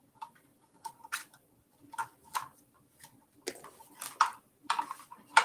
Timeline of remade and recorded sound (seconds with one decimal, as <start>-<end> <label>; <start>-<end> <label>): 0.0-0.5 remade; 0.5-1.3 recorded; 1.3-2.0 remade; 2.0-3.9 recorded; 3.9-5.4 remade